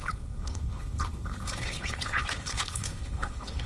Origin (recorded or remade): remade